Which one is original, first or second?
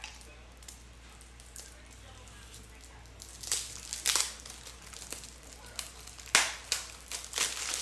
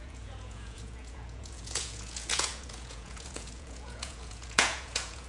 first